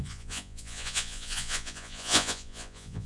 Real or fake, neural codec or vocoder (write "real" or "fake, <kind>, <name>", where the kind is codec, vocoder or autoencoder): fake, vocoder, Vocos